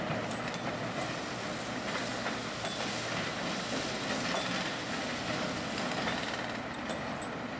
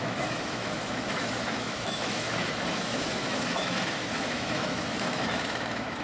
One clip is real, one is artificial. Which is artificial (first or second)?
second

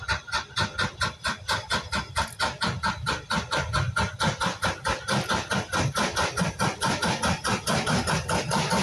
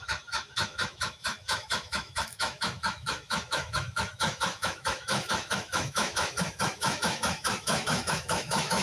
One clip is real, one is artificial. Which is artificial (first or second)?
second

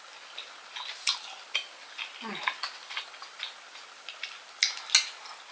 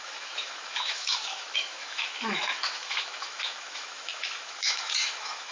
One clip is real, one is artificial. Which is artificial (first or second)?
second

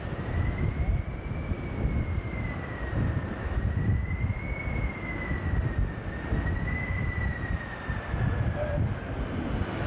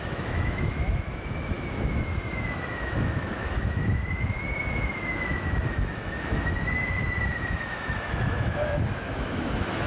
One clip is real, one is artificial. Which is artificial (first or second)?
second